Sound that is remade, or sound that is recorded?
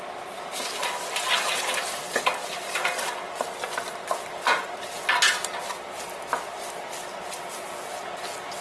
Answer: recorded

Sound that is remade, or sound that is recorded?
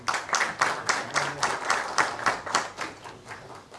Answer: recorded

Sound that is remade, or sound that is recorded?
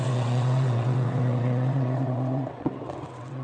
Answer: remade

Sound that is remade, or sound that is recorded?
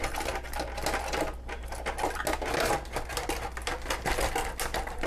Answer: recorded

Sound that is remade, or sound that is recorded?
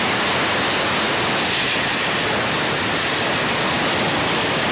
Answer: recorded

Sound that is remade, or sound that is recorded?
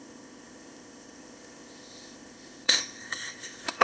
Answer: remade